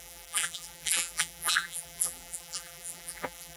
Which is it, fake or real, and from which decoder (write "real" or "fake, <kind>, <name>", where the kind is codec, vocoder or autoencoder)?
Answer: fake, vocoder, BigVGAN v2